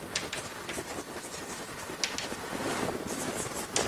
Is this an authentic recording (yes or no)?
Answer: yes